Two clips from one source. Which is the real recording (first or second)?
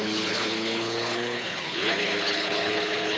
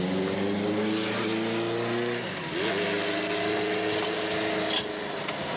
second